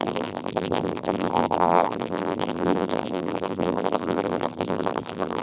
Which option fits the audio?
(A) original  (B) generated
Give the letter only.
B